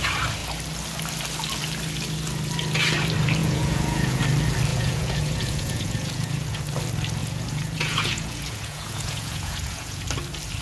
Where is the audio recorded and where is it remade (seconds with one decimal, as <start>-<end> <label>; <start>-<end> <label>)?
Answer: 0.0-3.4 recorded; 3.4-4.2 remade; 4.2-4.7 recorded; 4.7-6.6 remade; 6.6-7.2 recorded; 7.2-10.1 remade; 10.1-10.6 recorded